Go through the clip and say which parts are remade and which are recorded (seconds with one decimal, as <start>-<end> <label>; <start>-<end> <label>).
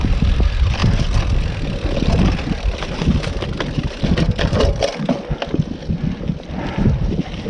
0.0-7.5 recorded